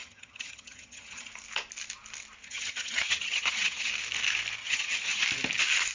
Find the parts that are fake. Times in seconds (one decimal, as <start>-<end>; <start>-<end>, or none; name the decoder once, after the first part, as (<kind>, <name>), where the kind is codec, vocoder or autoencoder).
0.0-1.3 (vocoder, HiFi-GAN); 2.4-3.9; 4.6-5.2